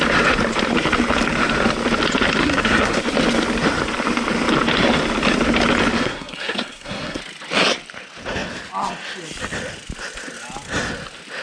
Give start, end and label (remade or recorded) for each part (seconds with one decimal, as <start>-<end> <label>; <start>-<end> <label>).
0.0-2.4 recorded; 2.4-3.0 remade; 3.0-6.0 recorded; 6.0-7.2 remade; 7.2-11.4 recorded